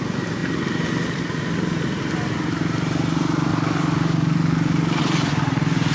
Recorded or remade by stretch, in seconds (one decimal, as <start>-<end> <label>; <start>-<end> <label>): 0.0-3.5 recorded; 3.5-5.0 remade; 5.0-5.9 recorded